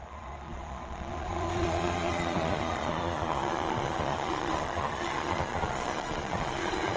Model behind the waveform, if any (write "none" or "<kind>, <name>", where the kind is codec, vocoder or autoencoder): vocoder, Vocos